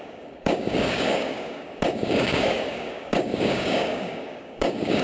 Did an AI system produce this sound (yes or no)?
yes